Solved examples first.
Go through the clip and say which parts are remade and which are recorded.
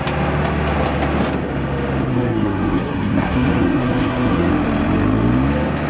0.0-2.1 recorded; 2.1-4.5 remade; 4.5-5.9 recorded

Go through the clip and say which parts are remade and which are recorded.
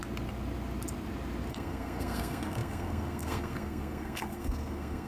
0.0-1.5 recorded; 1.5-5.1 remade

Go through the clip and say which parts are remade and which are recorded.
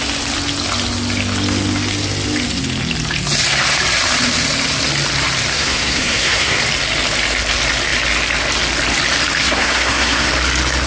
0.0-5.5 recorded; 5.5-6.6 remade; 6.6-9.4 recorded; 9.4-10.3 remade; 10.3-10.9 recorded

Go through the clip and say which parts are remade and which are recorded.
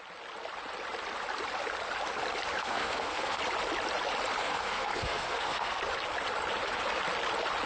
0.0-2.6 recorded; 2.6-3.4 remade; 3.4-4.4 recorded; 4.4-5.8 remade; 5.8-7.7 recorded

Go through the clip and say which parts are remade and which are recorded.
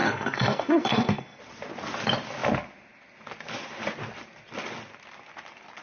0.0-1.4 remade; 1.4-5.8 recorded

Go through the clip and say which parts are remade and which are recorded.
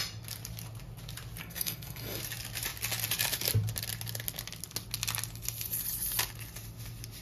0.0-1.4 recorded; 1.4-2.2 remade; 2.2-7.2 recorded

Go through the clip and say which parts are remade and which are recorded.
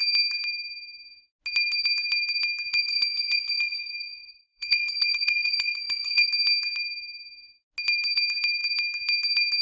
0.0-2.7 recorded; 2.7-6.3 remade; 6.3-9.6 recorded